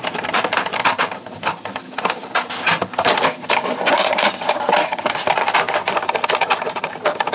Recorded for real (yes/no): no